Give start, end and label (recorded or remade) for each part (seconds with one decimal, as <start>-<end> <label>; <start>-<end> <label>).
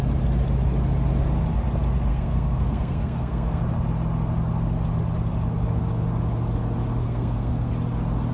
0.0-2.1 recorded; 2.1-3.6 remade; 3.6-7.0 recorded; 7.0-7.7 remade; 7.7-8.3 recorded